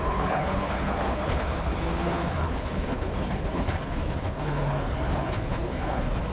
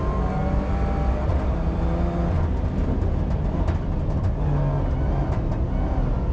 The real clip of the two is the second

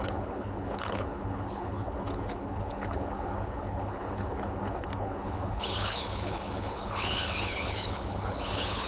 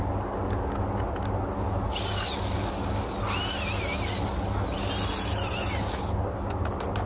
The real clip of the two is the second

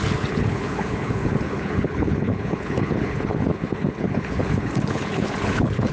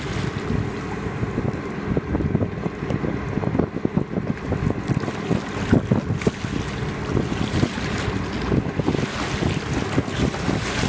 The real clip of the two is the second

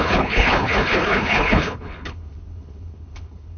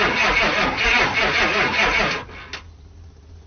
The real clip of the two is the second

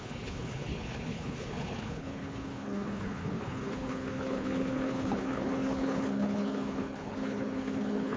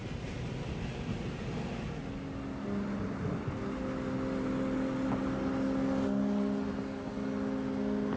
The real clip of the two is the second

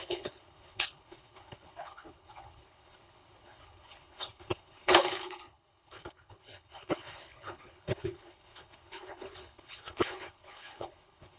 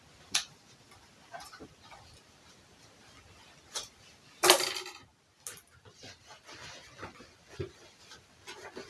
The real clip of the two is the second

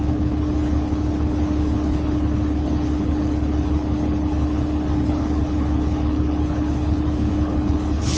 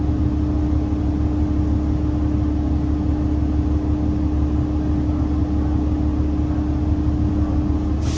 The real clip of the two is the second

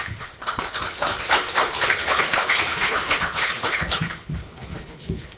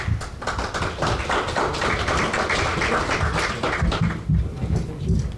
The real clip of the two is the second